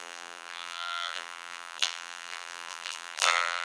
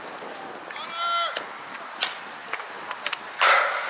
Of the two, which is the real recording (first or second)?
second